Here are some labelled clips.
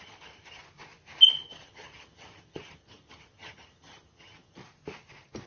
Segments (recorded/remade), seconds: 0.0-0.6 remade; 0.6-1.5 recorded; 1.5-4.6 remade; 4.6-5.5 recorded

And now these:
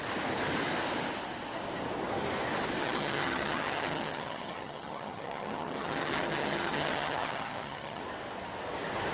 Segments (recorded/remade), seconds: 0.0-2.8 recorded; 2.8-8.0 remade; 8.0-9.1 recorded